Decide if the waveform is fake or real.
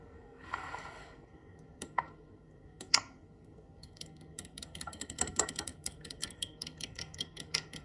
fake